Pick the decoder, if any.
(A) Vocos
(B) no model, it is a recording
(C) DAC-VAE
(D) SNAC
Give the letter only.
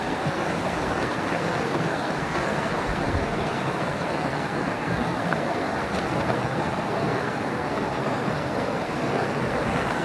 D